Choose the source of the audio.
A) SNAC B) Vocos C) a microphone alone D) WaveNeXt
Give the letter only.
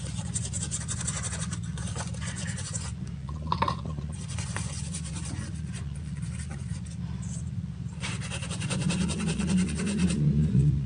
B